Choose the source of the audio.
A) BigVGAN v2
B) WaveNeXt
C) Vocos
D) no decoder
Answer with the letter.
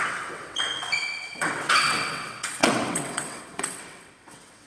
B